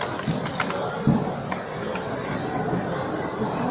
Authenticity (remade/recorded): recorded